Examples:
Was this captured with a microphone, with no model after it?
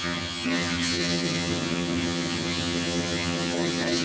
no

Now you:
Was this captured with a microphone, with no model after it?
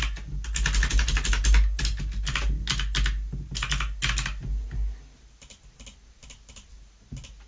yes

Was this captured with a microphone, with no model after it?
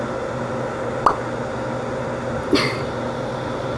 yes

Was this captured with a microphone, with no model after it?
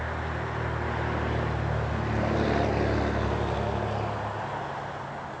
yes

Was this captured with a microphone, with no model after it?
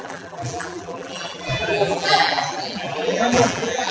no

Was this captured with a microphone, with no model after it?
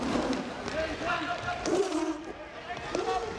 yes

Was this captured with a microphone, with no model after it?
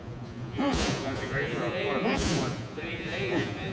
no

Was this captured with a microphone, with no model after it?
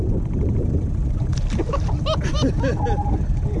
yes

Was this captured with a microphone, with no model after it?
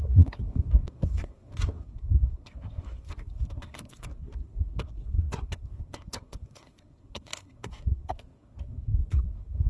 no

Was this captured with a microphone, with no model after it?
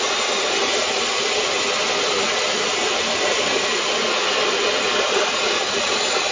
yes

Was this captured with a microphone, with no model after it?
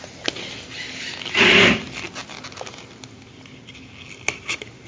yes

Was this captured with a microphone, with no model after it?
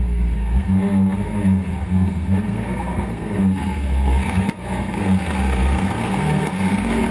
no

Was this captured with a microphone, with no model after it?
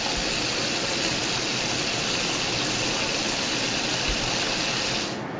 yes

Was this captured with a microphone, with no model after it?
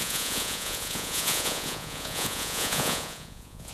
no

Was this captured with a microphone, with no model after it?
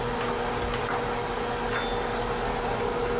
yes